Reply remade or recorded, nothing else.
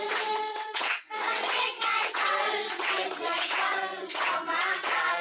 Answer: remade